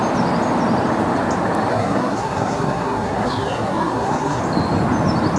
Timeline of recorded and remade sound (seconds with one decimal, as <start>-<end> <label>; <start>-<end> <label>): 0.0-1.7 recorded; 1.7-4.4 remade; 4.4-5.4 recorded